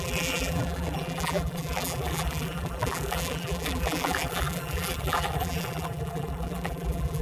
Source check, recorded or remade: remade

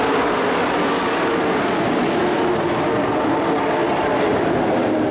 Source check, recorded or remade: recorded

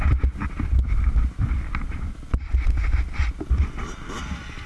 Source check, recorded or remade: recorded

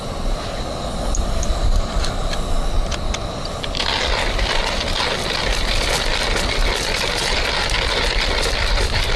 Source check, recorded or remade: recorded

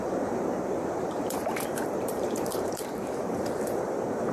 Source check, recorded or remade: remade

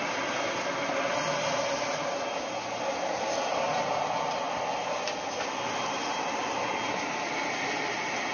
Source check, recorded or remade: recorded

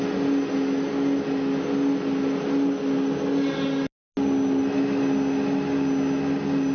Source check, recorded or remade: recorded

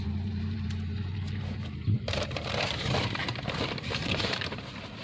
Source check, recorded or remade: remade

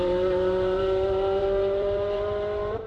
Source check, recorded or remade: remade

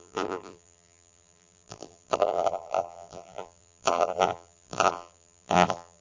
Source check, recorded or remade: remade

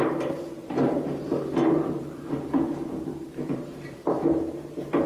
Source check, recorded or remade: remade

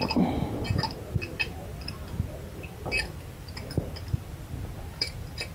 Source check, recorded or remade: remade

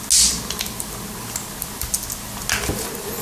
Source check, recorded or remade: recorded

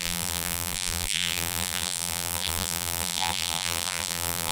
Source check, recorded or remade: remade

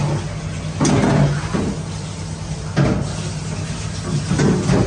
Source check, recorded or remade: recorded